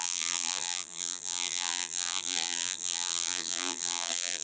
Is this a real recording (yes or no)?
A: no